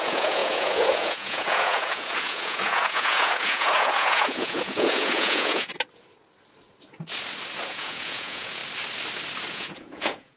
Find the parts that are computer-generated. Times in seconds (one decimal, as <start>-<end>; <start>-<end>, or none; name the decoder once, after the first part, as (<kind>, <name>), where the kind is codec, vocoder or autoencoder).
0.0-5.7 (vocoder, Vocos); 7.6-8.6; 9.5-10.4